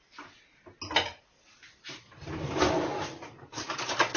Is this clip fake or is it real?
real